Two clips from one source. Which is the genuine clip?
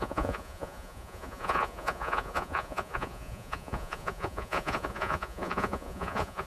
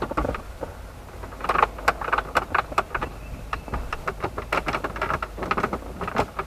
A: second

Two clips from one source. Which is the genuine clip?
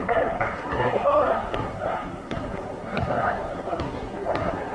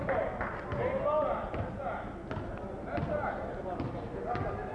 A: second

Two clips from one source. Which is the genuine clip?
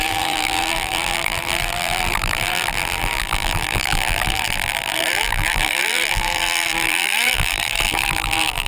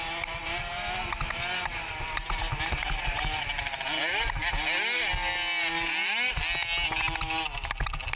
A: second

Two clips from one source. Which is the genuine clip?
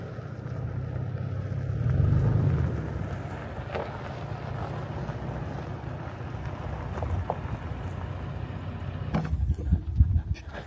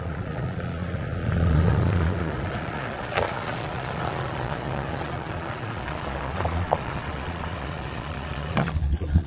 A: first